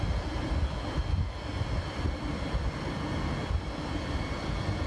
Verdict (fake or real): fake